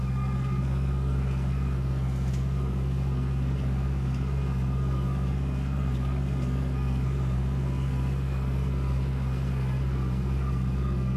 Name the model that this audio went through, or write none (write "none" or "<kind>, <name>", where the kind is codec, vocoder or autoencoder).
codec, SNAC